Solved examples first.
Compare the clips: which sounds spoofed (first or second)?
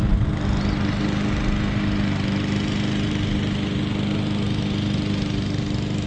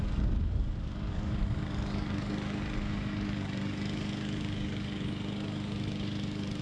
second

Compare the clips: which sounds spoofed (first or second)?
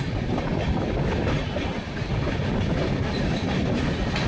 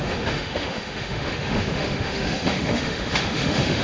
second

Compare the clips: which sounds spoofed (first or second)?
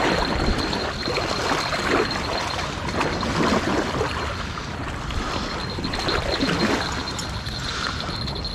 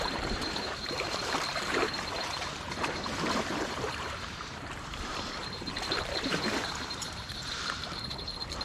second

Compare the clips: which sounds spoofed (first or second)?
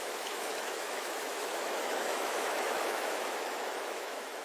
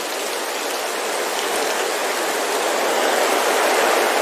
first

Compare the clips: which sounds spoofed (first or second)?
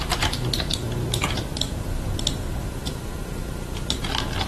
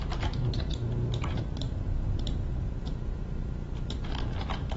first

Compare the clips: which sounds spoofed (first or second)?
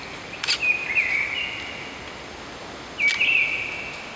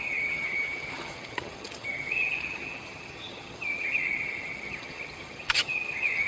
second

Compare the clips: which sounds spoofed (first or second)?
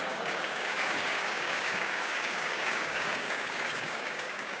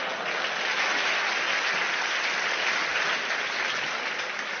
first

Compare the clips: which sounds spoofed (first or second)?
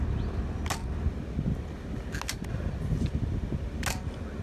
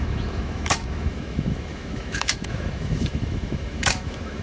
second